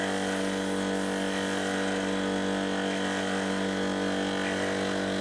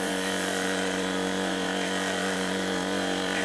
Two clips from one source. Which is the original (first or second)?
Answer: first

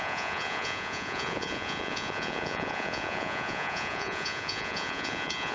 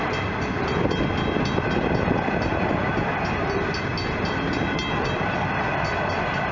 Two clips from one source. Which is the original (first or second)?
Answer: second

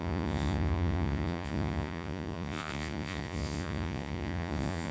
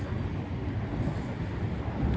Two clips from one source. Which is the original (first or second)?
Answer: second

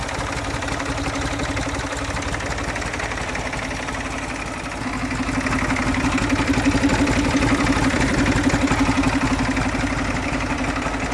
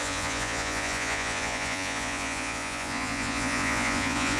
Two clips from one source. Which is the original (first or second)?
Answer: first